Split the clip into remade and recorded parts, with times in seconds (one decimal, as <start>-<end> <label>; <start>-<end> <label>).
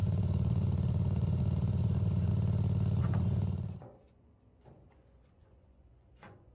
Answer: 0.0-2.3 remade; 2.3-3.0 recorded; 3.0-6.5 remade